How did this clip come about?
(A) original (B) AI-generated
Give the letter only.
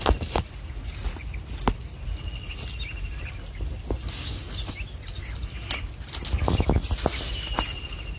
A